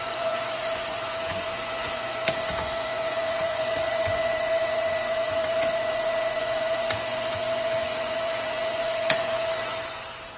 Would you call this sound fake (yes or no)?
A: yes